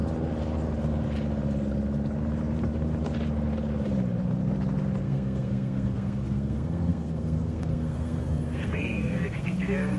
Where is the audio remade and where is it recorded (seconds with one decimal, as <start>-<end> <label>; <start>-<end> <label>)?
0.0-5.0 recorded; 5.0-10.0 remade